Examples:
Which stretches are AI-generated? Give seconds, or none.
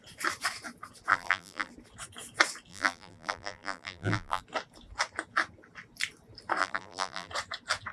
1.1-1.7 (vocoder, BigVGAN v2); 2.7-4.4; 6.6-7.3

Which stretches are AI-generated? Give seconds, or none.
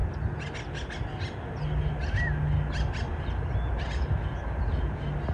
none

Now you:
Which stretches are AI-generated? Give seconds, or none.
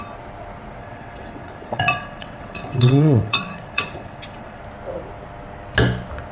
0.8-4.6 (vocoder, WaveNeXt)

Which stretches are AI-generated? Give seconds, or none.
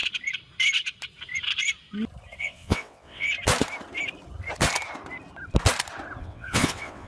2.4-3.3 (vocoder, WaveNeXt); 6.2-7.1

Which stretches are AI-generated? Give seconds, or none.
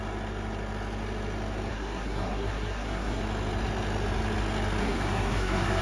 1.7-3.2 (codec, SNAC); 4.8-5.8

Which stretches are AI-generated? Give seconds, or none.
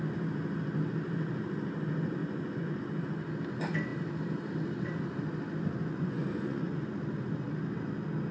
2.2-2.8 (vocoder, Vocos); 5.9-6.9